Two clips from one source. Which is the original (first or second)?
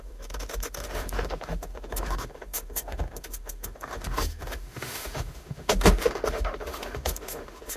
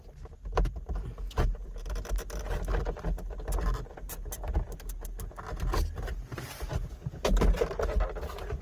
second